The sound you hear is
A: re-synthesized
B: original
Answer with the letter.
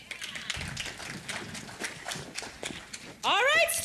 B